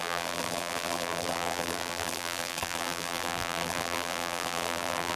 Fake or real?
fake